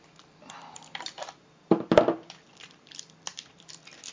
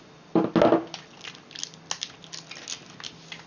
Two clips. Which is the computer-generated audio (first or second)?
first